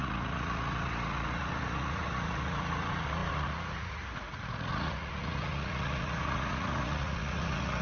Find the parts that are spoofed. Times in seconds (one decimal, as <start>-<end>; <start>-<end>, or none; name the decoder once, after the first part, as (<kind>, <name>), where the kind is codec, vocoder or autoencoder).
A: 0.0-7.8 (vocoder, Vocos)